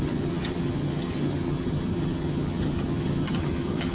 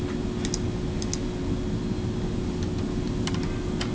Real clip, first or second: second